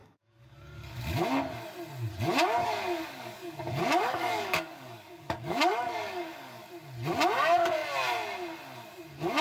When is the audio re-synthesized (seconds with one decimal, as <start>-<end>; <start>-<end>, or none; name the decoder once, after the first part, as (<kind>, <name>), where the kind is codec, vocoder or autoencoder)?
0.0-1.0 (codec, DAC); 2.6-6.7